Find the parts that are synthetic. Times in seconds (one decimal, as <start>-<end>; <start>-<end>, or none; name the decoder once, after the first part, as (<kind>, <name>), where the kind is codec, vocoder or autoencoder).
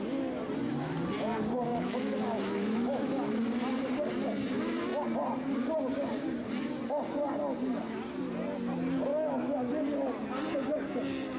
1.7-3.3 (autoencoder, DAC-VAE); 9.1-9.7